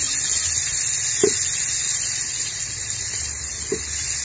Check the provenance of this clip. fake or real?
real